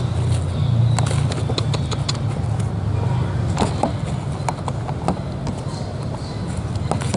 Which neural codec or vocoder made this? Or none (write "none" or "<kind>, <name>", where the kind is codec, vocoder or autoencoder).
none